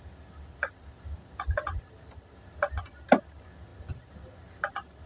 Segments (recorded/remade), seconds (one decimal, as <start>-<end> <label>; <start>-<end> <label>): 0.0-5.1 recorded